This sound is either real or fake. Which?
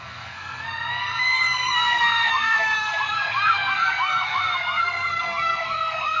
fake